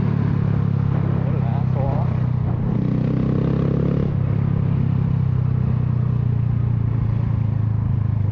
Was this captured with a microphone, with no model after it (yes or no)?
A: yes